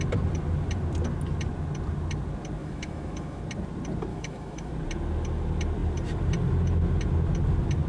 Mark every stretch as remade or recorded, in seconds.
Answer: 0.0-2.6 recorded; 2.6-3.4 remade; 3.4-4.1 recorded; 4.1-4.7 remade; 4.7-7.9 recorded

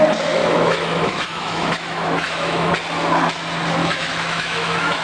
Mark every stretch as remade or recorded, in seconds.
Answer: 0.0-0.4 recorded; 0.4-2.7 remade; 2.7-3.8 recorded; 3.8-5.0 remade

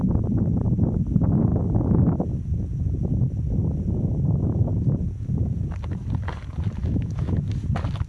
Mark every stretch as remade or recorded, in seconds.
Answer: 0.0-6.8 recorded; 6.8-7.4 remade; 7.4-8.1 recorded

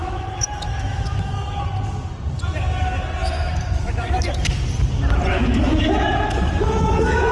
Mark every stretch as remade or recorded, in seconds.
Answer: 0.0-1.3 remade; 1.3-3.2 recorded; 3.2-4.5 remade; 4.5-5.3 recorded; 5.3-7.3 remade

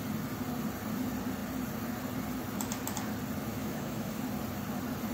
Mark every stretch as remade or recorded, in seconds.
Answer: 0.0-3.5 recorded; 3.5-4.2 remade; 4.2-5.1 recorded

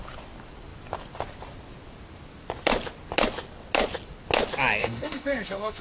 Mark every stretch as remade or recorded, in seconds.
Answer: 0.0-4.8 recorded; 4.8-5.8 remade